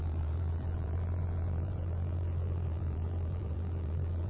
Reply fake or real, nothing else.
fake